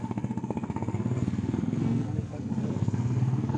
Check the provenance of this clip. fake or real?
fake